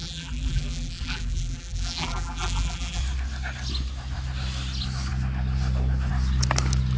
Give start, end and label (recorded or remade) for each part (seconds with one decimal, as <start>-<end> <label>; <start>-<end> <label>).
0.0-3.0 remade; 3.0-7.0 recorded